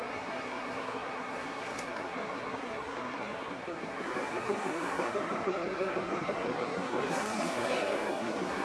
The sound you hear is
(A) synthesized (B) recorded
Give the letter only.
A